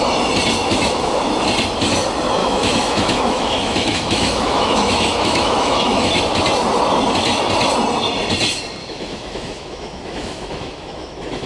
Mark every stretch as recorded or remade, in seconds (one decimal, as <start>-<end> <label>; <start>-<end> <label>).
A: 0.0-0.6 recorded; 0.6-1.2 remade; 1.2-2.4 recorded; 2.4-6.2 remade; 6.2-8.8 recorded; 8.8-11.5 remade